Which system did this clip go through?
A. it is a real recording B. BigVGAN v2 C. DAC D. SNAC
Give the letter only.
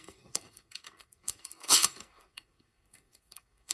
D